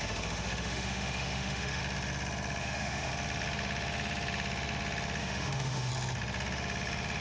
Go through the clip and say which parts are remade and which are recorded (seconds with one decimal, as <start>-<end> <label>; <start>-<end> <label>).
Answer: 0.0-1.8 remade; 1.8-2.6 recorded; 2.6-3.1 remade; 3.1-5.2 recorded; 5.2-5.9 remade; 5.9-7.2 recorded